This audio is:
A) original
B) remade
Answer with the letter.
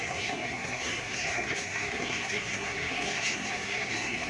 B